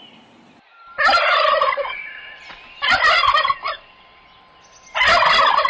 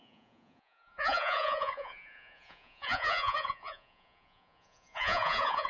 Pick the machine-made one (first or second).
second